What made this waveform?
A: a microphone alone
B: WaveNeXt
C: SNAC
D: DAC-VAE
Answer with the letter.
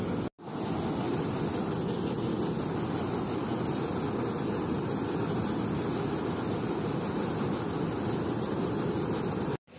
A